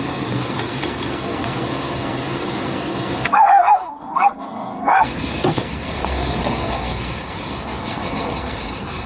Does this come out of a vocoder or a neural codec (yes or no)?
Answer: yes